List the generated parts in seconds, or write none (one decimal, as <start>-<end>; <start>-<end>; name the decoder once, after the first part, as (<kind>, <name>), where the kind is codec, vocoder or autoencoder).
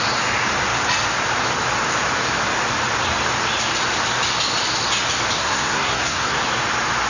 5.4-6.4 (codec, SNAC)